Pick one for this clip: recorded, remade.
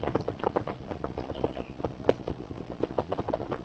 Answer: remade